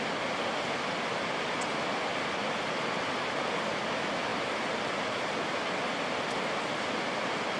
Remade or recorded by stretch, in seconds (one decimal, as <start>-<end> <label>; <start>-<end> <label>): 0.0-7.6 recorded